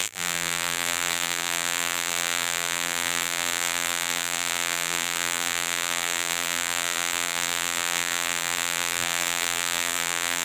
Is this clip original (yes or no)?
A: no